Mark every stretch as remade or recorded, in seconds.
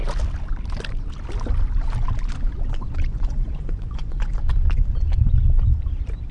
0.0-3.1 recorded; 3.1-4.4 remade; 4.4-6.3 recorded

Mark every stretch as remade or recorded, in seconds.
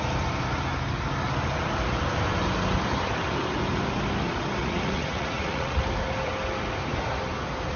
0.0-4.6 recorded; 4.6-5.8 remade; 5.8-7.8 recorded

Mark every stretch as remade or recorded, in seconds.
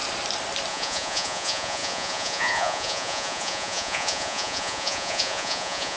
0.0-0.7 recorded; 0.7-6.0 remade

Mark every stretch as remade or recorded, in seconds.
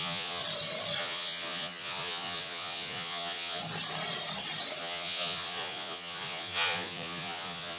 0.0-0.4 remade; 0.4-1.0 recorded; 1.0-3.6 remade; 3.6-4.8 recorded; 4.8-7.8 remade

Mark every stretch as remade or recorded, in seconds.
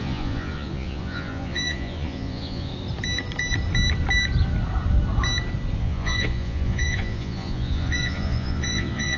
0.0-2.7 remade; 2.7-5.8 recorded; 5.8-9.2 remade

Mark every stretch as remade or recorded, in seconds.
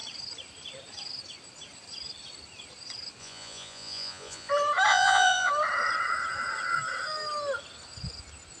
0.0-3.2 recorded; 3.2-4.5 remade; 4.5-4.9 recorded; 4.9-5.5 remade; 5.5-8.6 recorded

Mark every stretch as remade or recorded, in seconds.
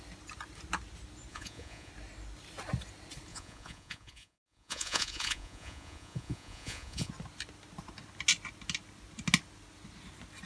0.0-1.3 recorded; 1.3-1.9 remade; 1.9-3.3 recorded; 3.3-7.1 remade; 7.1-10.5 recorded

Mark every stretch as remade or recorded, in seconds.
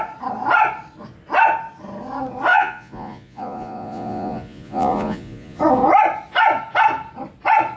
0.0-2.5 recorded; 2.5-5.6 remade; 5.6-7.8 recorded